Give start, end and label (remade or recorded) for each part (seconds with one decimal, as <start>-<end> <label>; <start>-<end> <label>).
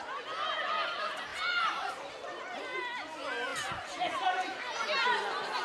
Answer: 0.0-1.3 recorded; 1.3-1.9 remade; 1.9-5.6 recorded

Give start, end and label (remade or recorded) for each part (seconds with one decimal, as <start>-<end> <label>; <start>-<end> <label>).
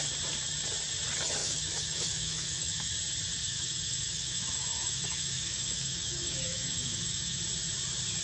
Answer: 0.0-1.4 recorded; 1.4-2.9 remade; 2.9-3.4 recorded; 3.4-7.4 remade; 7.4-8.2 recorded